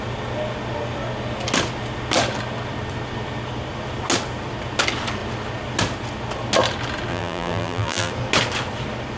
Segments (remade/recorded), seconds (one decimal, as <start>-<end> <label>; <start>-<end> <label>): 0.0-7.1 recorded; 7.1-8.1 remade; 8.1-9.2 recorded